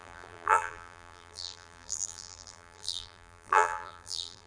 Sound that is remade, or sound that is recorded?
remade